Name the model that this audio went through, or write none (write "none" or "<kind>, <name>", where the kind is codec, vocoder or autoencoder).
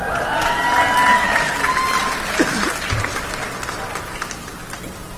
none